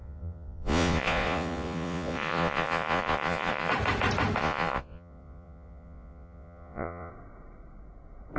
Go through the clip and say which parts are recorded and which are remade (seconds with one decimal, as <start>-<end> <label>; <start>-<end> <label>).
0.0-3.7 remade; 3.7-4.4 recorded; 4.4-7.1 remade; 7.1-8.4 recorded